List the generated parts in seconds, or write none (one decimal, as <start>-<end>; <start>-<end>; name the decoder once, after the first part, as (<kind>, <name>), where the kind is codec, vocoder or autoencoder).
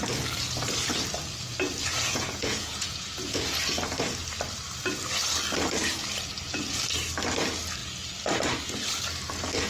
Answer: 1.9-3.6 (vocoder, Vocos)